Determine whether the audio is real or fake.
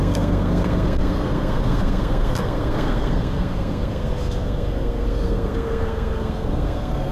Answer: fake